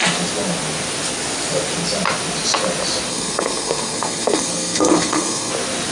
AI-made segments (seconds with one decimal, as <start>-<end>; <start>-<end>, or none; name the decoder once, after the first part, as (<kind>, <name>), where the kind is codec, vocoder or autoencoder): 3.1-5.5 (codec, SNAC)